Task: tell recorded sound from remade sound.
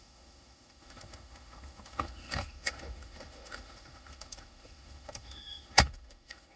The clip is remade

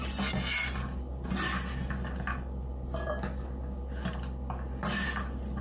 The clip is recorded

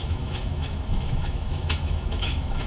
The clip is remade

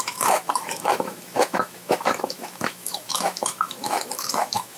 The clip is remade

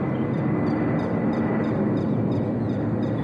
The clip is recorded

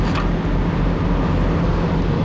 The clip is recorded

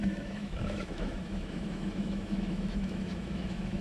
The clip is remade